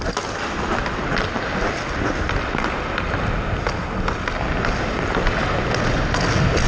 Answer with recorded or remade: recorded